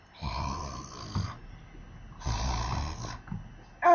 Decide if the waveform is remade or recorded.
recorded